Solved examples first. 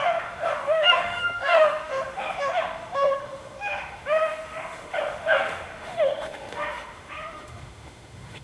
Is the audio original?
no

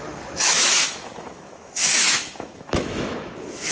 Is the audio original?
no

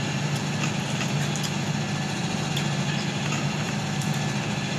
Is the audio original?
yes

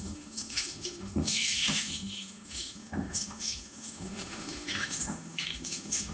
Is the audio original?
no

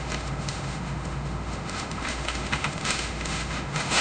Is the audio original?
no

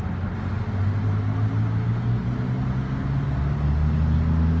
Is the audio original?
yes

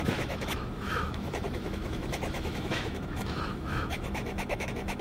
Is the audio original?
no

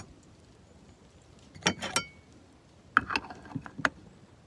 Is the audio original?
yes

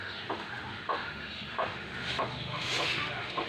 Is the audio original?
no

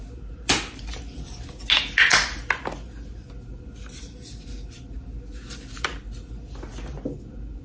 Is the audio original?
yes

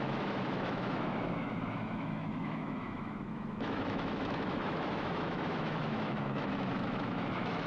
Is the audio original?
no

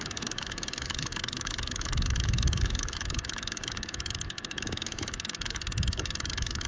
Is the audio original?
no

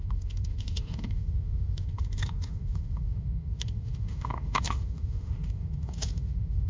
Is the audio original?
no